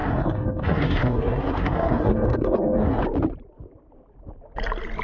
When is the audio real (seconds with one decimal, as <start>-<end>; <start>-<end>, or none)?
3.0-5.0